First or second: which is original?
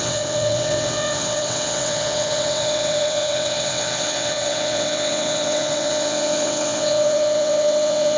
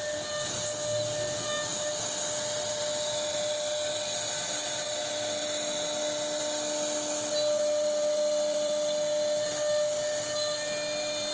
second